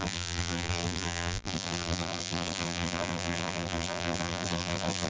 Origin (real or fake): fake